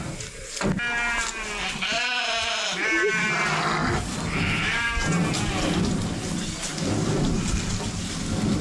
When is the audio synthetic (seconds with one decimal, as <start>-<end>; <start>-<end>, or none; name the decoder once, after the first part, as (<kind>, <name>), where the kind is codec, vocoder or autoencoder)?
none